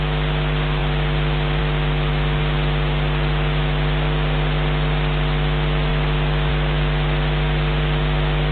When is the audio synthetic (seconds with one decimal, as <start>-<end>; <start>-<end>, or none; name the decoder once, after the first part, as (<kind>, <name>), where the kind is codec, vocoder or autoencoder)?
none